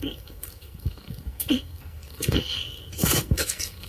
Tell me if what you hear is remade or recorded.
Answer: remade